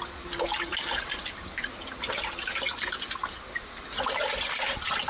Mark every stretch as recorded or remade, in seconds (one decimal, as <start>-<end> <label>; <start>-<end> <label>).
0.0-0.7 remade; 0.7-3.8 recorded; 3.8-5.1 remade